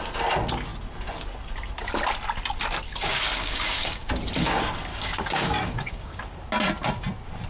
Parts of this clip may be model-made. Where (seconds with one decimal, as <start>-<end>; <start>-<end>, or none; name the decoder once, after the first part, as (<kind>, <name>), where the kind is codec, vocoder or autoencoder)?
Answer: 2.9-4.1 (codec, DAC); 4.9-6.2

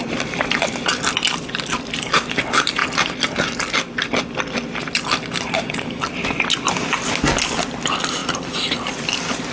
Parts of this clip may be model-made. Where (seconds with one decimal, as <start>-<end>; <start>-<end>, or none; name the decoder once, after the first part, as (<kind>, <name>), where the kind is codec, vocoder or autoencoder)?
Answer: 0.0-2.8 (vocoder, BigVGAN v2); 5.7-9.5